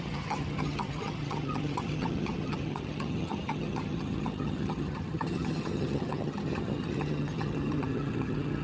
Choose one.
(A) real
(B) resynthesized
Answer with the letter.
B